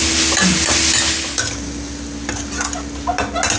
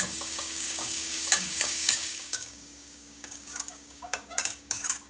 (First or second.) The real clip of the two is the first